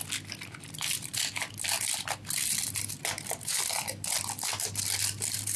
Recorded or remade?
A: recorded